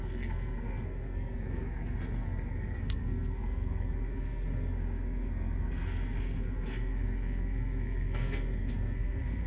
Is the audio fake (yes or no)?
yes